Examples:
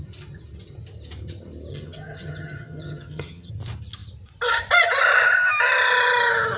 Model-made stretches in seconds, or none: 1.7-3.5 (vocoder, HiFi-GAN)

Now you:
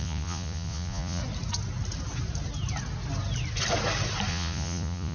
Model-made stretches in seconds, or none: 0.0-1.2 (vocoder, Vocos); 4.3-5.1

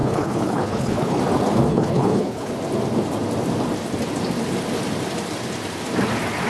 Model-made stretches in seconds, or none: 0.0-1.2 (codec, HILCodec); 1.7-2.5

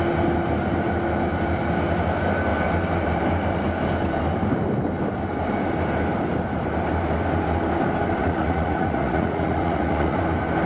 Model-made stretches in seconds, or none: 8.2-10.2 (vocoder, Vocos)

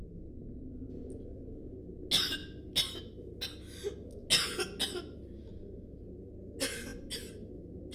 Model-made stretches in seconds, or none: none

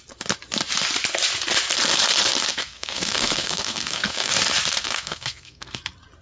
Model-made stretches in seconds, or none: 2.5-4.3 (codec, SNAC); 4.8-5.8

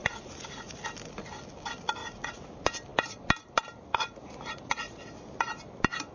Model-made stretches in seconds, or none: 0.0-0.8 (vocoder, Vocos); 2.0-2.5; 3.9-5.0

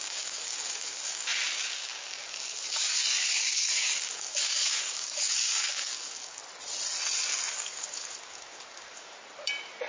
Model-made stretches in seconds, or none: 0.0-6.4 (codec, DAC); 7.5-9.1